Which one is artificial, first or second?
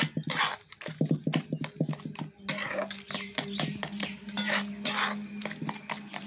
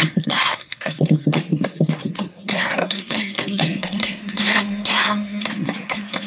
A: second